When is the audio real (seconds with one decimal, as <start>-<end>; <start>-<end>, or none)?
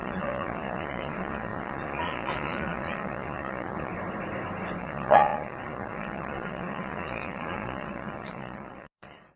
3.9-4.8